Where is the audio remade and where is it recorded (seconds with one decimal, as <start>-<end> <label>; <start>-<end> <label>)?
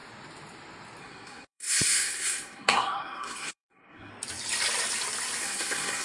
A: 0.0-1.0 recorded; 1.0-4.1 remade; 4.1-5.4 recorded; 5.4-6.0 remade